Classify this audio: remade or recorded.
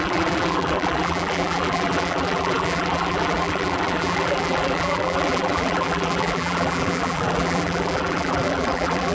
remade